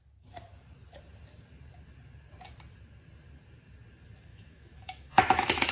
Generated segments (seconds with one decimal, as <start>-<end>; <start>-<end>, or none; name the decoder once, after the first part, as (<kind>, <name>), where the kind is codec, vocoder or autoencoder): 4.3-5.7 (autoencoder, DAC-VAE)